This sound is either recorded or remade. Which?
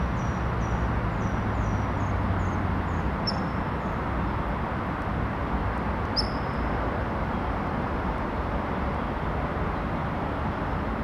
recorded